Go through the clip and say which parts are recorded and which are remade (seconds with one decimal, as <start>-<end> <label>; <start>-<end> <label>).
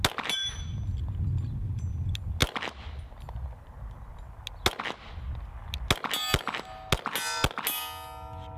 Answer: 0.0-8.6 recorded